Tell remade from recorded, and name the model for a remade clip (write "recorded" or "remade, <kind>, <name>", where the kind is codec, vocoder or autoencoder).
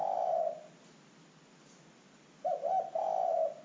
recorded